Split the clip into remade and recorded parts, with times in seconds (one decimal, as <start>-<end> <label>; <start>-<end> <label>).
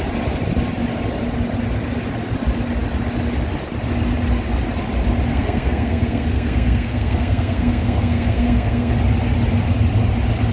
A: 0.0-5.3 recorded; 5.3-8.9 remade; 8.9-10.5 recorded